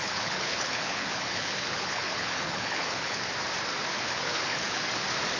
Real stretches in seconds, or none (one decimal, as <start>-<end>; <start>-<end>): 3.2-3.9; 4.9-5.4